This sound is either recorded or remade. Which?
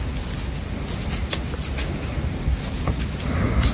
recorded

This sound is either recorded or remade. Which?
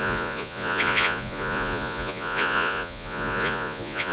remade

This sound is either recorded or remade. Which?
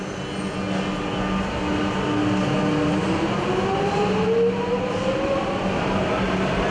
recorded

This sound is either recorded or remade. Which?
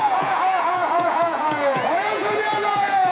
remade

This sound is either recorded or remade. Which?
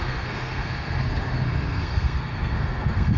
remade